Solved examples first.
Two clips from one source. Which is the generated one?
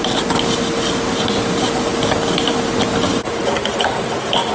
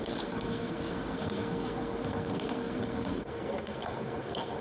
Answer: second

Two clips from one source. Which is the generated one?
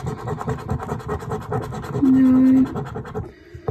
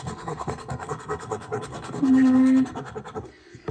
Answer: second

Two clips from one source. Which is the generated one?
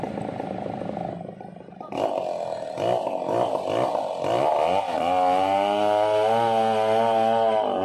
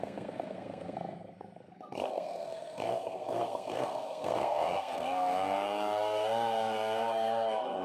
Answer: second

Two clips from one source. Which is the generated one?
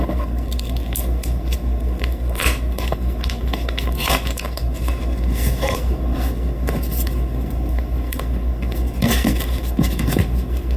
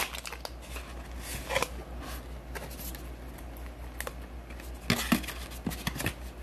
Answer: first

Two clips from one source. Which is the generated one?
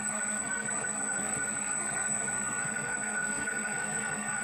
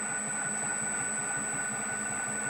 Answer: first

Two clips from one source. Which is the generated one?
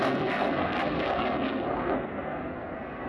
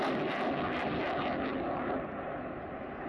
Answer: first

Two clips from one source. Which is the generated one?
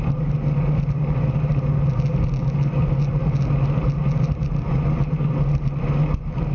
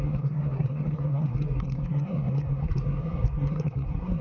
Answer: second